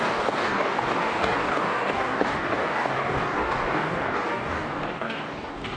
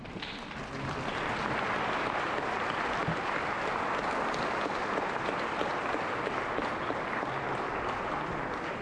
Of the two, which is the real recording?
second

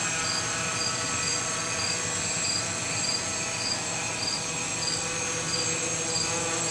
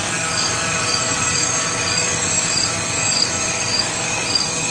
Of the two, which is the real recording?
first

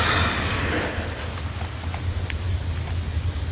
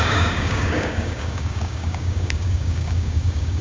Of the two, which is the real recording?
first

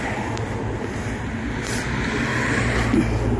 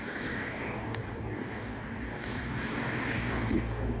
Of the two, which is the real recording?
first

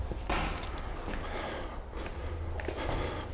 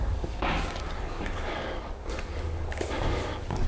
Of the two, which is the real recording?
first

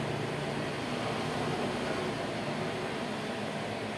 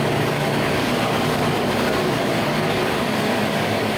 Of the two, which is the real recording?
first